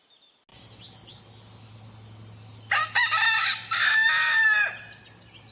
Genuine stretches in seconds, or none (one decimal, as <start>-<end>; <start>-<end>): 0.0-5.5